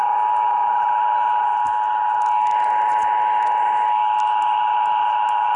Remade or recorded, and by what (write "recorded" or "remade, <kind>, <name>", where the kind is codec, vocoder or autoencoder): recorded